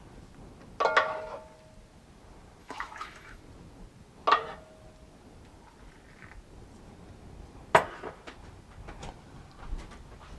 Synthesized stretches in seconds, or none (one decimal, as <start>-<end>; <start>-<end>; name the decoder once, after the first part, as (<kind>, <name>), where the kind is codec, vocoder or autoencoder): 2.6-3.4 (autoencoder, DAC-VAE)